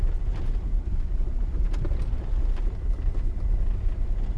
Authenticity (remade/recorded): recorded